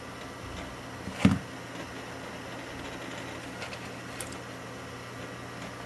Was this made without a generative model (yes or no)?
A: yes